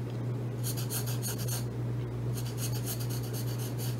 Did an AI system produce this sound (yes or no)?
no